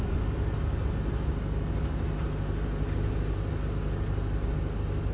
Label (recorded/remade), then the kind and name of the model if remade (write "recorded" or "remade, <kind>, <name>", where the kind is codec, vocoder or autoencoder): recorded